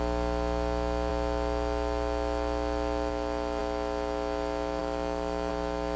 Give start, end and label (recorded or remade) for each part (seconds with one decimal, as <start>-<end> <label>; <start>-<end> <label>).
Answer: 0.0-4.8 recorded; 4.8-5.5 remade; 5.5-6.0 recorded

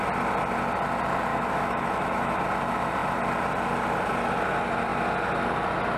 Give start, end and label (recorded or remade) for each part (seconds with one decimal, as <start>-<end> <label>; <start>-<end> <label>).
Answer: 0.0-1.3 recorded; 1.3-2.4 remade; 2.4-6.0 recorded

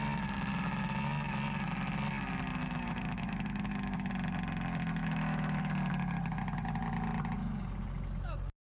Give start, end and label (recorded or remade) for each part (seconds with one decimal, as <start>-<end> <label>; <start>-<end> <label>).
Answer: 0.0-2.6 recorded; 2.6-4.1 remade; 4.1-5.0 recorded; 5.0-5.7 remade; 5.7-8.7 recorded

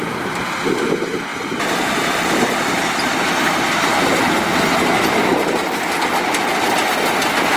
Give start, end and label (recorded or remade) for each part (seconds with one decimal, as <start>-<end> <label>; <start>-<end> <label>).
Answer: 0.0-7.6 recorded

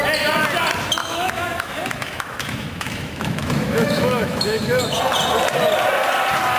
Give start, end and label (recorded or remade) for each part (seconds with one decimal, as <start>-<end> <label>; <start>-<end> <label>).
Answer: 0.0-1.0 recorded; 1.0-5.0 remade; 5.0-6.6 recorded

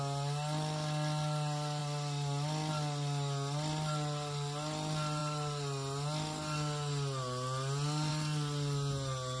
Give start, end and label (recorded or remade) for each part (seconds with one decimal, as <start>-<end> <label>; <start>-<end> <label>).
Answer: 0.0-9.4 recorded